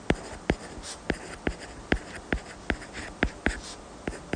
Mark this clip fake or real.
real